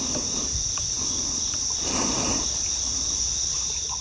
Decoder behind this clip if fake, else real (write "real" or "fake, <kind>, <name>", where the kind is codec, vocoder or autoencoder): real